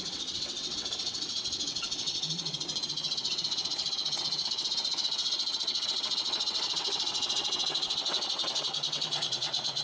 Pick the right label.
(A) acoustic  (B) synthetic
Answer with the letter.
B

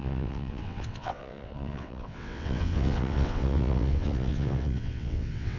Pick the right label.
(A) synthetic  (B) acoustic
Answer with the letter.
A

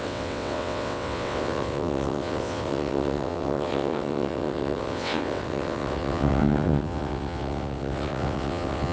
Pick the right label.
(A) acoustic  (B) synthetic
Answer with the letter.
B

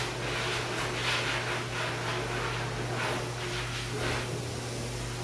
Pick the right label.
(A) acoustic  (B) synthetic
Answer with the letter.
A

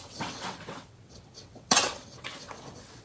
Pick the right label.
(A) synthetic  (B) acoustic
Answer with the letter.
A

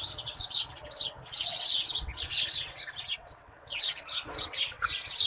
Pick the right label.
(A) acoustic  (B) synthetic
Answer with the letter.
B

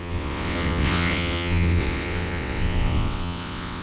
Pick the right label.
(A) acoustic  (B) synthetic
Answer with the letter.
B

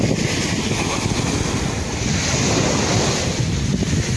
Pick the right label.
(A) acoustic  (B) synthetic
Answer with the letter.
A